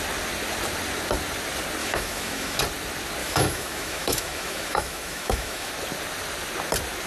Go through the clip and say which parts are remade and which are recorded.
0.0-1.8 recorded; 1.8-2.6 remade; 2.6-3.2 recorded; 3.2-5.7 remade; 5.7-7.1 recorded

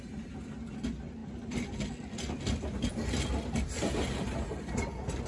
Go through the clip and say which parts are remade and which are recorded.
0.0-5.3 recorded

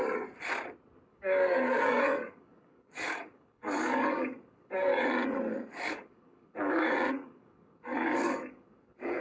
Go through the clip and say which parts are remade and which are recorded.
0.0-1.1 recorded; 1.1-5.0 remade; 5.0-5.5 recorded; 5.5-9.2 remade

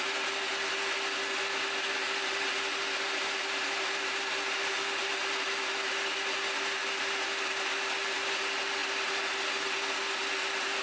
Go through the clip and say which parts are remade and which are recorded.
0.0-10.8 recorded

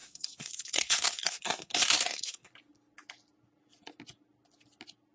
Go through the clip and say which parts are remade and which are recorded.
0.0-2.5 remade; 2.5-5.1 recorded